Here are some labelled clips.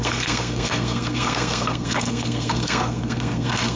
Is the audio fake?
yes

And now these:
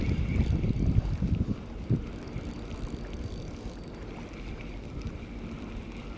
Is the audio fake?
no